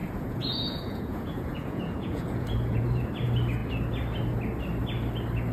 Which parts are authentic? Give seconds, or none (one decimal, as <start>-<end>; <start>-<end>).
2.8-5.5